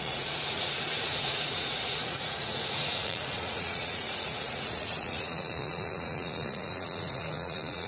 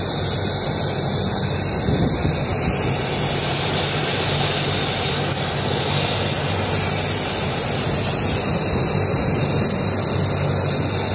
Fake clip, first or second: first